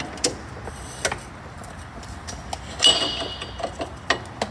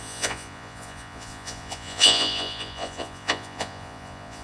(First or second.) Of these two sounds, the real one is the first